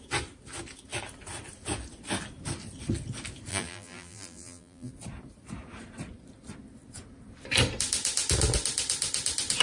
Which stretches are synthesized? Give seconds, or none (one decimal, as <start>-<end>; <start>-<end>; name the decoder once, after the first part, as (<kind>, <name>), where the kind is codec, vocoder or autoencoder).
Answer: 3.5-4.9 (vocoder, BigVGAN v2)

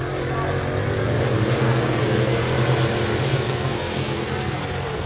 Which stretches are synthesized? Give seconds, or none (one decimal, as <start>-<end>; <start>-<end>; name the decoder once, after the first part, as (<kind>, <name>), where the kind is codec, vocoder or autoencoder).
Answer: 1.6-2.4 (codec, SNAC); 3.3-4.6